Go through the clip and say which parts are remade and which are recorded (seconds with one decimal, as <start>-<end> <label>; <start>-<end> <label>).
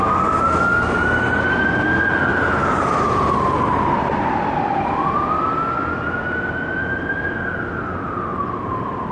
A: 0.0-2.3 recorded; 2.3-4.3 remade; 4.3-8.3 recorded; 8.3-9.1 remade